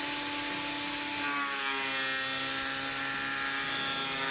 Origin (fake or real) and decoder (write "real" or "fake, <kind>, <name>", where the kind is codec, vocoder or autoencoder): real